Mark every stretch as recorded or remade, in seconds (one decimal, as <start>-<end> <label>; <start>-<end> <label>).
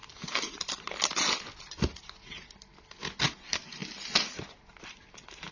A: 0.0-5.5 recorded